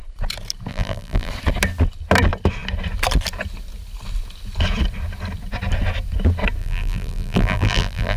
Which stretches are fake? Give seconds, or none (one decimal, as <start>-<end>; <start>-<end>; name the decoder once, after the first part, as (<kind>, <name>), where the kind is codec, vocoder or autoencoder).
0.7-1.3 (vocoder, BigVGAN v2); 6.6-8.2